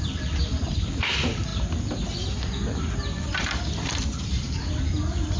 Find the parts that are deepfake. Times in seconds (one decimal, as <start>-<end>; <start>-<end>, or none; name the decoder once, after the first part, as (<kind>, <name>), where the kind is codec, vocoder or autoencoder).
none